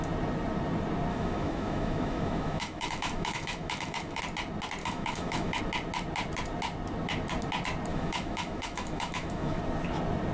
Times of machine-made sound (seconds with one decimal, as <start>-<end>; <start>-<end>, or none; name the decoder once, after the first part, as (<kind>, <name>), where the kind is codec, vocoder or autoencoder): 1.1-4.2 (autoencoder, DAC-VAE); 4.8-5.6; 7.9-9.6